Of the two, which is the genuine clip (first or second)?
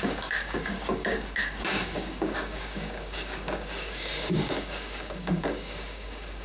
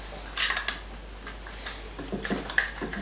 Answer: second